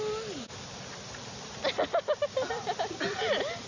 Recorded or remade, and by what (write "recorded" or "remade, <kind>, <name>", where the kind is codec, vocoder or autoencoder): recorded